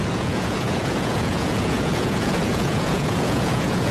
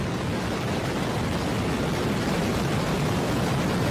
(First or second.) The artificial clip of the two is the first